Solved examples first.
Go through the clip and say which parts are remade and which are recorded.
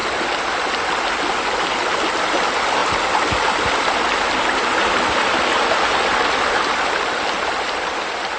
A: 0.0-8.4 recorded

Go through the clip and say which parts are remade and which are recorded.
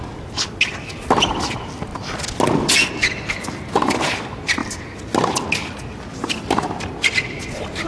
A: 0.0-7.9 recorded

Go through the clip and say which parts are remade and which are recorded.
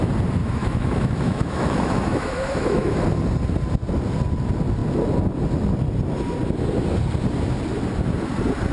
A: 0.0-0.4 recorded; 0.4-3.0 remade; 3.0-8.7 recorded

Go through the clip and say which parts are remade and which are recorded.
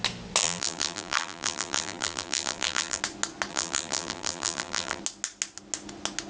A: 0.0-0.4 recorded; 0.4-3.0 remade; 3.0-3.5 recorded; 3.5-5.0 remade; 5.0-6.3 recorded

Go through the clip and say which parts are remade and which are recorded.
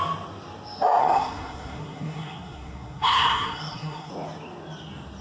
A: 0.0-1.0 recorded; 1.0-4.1 remade; 4.1-5.2 recorded